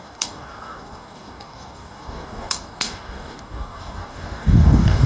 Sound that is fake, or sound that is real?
fake